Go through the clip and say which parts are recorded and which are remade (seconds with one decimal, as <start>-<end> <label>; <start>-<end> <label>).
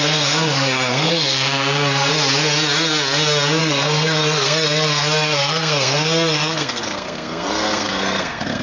0.0-2.1 remade; 2.1-3.6 recorded; 3.6-8.6 remade